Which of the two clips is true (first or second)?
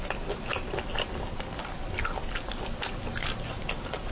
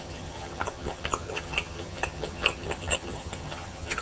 first